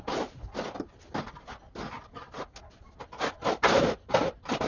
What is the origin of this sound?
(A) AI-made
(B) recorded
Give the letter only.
B